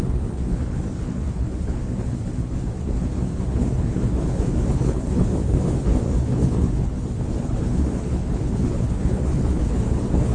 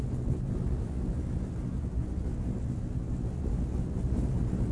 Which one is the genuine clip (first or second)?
second